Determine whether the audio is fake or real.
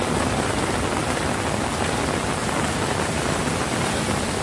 real